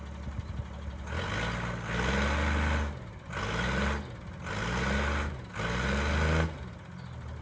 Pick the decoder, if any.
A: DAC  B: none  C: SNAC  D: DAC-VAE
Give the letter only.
B